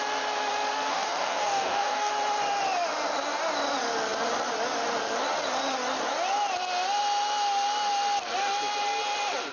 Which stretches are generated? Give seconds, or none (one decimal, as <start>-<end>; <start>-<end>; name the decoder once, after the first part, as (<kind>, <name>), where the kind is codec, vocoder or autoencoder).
0.9-2.1 (codec, DAC)